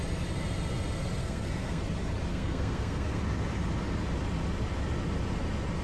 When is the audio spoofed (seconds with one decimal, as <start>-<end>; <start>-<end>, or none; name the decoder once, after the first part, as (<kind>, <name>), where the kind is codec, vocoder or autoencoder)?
1.2-1.8 (codec, SNAC); 2.3-3.2

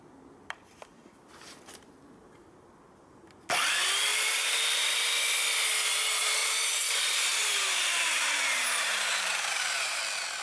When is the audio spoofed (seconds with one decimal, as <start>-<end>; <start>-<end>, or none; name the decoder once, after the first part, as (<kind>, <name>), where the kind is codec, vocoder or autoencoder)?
4.1-5.1 (vocoder, BigVGAN v2); 6.4-10.0